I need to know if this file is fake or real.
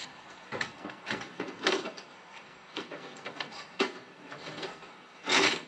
fake